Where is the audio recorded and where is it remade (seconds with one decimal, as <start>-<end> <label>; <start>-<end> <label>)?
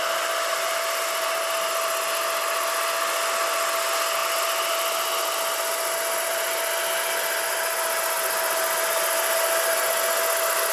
0.0-10.7 recorded